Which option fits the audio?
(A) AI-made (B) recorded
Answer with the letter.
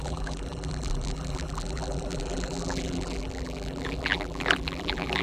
A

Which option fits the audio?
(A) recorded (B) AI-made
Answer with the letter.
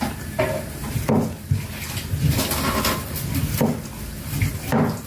A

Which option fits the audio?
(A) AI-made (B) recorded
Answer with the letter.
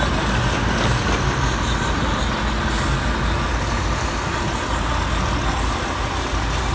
B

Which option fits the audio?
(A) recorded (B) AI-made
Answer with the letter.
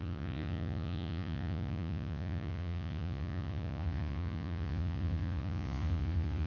B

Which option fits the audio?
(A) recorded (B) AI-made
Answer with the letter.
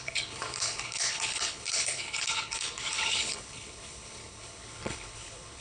B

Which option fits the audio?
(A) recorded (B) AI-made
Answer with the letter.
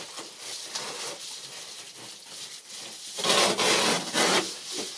A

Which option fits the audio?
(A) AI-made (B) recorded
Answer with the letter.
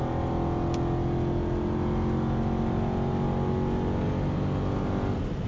B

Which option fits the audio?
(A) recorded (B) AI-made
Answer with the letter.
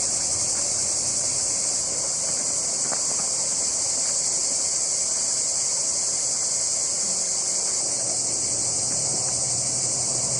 A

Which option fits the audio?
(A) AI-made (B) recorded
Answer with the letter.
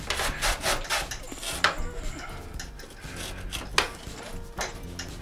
B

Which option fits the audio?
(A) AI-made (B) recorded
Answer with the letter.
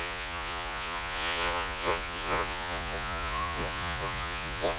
A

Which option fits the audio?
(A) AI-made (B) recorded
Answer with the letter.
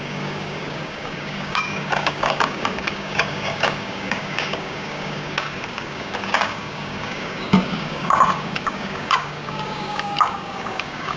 A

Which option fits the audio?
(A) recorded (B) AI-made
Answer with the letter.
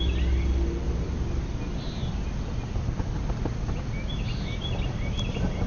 A